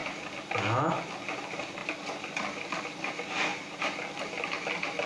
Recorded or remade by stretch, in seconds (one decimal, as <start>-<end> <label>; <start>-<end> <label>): 0.0-1.8 recorded; 1.8-2.8 remade; 2.8-3.5 recorded; 3.5-4.2 remade; 4.2-5.1 recorded

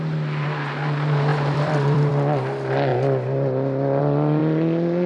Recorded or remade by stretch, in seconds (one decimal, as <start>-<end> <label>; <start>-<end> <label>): 0.0-1.3 recorded; 1.3-2.1 remade; 2.1-5.1 recorded

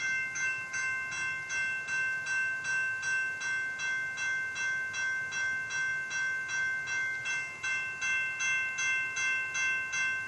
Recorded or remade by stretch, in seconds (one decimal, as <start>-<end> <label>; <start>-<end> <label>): 0.0-10.3 recorded

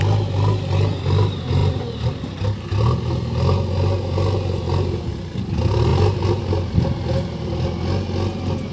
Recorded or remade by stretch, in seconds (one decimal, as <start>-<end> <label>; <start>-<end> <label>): 0.0-1.6 recorded; 1.6-2.2 remade; 2.2-8.7 recorded

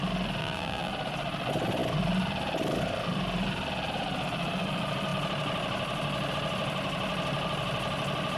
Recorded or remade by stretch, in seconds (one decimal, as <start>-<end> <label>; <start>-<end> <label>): 0.0-0.4 recorded; 0.4-0.9 remade; 0.9-8.4 recorded

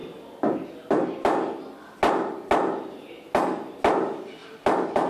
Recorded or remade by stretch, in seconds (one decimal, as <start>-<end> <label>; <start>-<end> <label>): 0.0-5.1 recorded

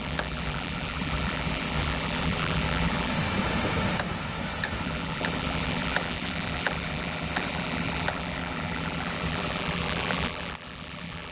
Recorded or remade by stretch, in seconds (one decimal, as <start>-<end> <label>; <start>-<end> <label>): 0.0-3.1 remade; 3.1-4.8 recorded; 4.8-11.3 remade